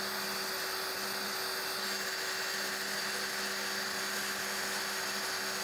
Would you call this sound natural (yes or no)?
yes